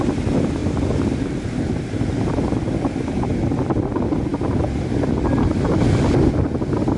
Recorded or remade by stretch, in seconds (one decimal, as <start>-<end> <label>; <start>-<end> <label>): 0.0-7.0 recorded